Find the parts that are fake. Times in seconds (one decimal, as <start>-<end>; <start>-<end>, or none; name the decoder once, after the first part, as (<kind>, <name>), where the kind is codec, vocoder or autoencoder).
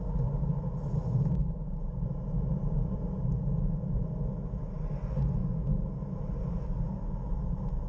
none